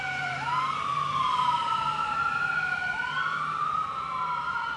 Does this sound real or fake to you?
fake